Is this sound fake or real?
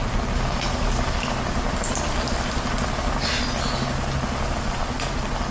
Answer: real